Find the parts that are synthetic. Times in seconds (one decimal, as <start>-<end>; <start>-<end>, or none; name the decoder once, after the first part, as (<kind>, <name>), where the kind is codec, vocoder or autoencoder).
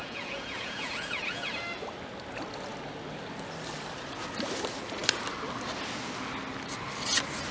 0.0-1.5 (vocoder, Vocos)